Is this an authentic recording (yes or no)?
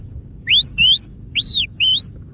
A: no